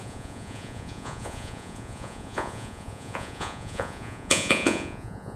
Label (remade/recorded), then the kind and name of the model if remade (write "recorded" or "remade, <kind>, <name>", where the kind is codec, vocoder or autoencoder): remade, vocoder, Vocos